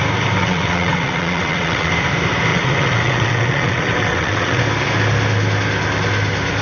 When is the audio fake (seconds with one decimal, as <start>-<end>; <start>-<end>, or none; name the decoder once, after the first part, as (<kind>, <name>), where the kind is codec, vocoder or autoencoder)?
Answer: 0.4-1.9 (vocoder, WaveNeXt); 2.5-4.6